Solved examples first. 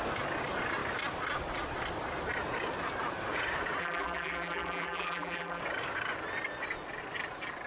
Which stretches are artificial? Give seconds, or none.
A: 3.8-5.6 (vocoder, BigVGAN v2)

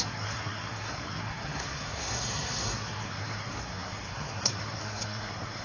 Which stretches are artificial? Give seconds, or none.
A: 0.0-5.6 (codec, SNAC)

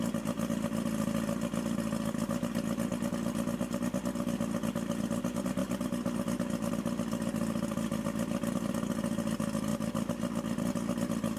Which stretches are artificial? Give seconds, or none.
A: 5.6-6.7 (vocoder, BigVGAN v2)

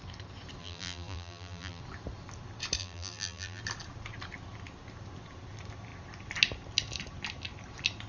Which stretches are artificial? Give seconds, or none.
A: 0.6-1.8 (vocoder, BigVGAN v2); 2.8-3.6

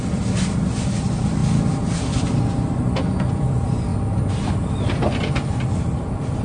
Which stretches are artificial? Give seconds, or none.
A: 0.0-1.4 (vocoder, BigVGAN v2); 3.3-3.9